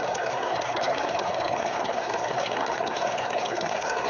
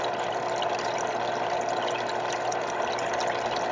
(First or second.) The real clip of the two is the second